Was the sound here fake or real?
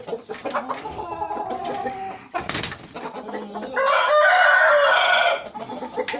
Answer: real